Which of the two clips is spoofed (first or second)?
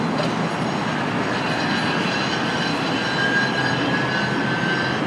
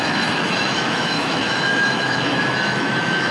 second